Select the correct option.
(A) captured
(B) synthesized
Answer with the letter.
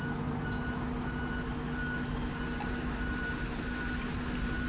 A